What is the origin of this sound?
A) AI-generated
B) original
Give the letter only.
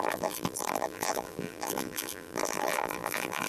A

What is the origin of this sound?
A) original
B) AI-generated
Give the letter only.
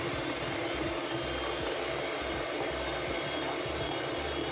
A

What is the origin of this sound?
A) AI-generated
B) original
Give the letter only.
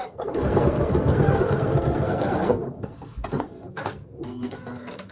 A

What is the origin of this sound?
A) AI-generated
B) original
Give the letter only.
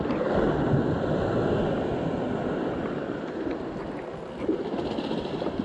B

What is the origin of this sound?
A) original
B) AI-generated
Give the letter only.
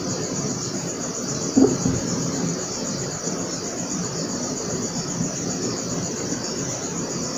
B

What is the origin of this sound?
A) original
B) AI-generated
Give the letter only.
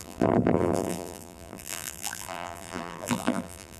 B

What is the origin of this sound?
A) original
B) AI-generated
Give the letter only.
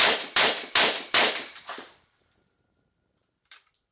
B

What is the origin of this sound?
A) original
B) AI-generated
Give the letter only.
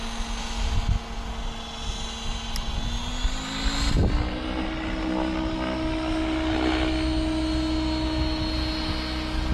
A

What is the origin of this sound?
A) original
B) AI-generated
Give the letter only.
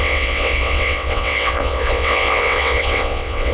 B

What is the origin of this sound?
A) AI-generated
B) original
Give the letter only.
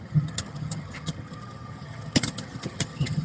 A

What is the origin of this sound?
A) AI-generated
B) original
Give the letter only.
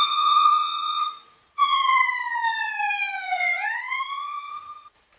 A